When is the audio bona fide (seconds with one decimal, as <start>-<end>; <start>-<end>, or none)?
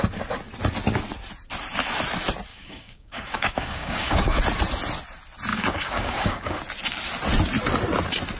0.0-2.5; 4.4-5.5; 6.6-8.4